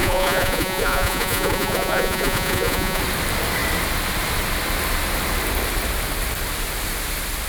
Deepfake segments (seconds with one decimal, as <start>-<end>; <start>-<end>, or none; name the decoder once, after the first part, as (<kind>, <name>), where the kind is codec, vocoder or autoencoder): 0.0-3.0 (vocoder, Vocos)